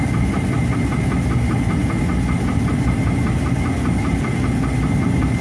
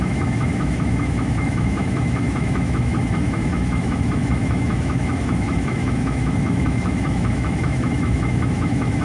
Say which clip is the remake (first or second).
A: second